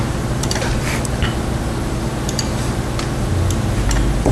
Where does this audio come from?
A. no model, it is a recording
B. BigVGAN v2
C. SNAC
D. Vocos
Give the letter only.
A